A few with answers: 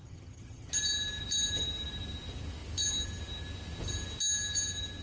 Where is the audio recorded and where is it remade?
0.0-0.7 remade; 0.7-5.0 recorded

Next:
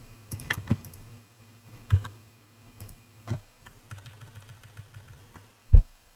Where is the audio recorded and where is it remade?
0.0-3.7 remade; 3.7-5.6 recorded; 5.6-6.2 remade

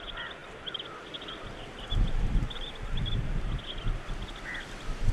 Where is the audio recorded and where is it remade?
0.0-5.1 recorded

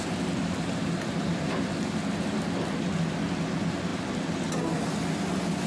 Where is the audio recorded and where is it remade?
0.0-0.4 recorded; 0.4-1.7 remade; 1.7-5.7 recorded

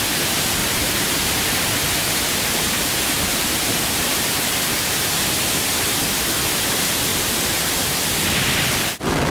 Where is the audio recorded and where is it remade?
0.0-0.6 recorded; 0.6-4.9 remade; 4.9-7.1 recorded; 7.1-7.9 remade; 7.9-9.3 recorded

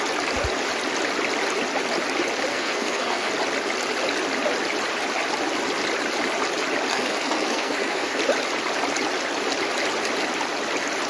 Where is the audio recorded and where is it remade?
0.0-2.5 recorded; 2.5-3.3 remade; 3.3-6.9 recorded; 6.9-8.2 remade; 8.2-11.1 recorded

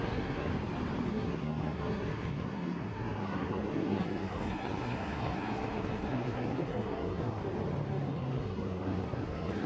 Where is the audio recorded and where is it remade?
0.0-0.5 remade; 0.5-1.1 recorded; 1.1-7.4 remade; 7.4-8.0 recorded; 8.0-9.7 remade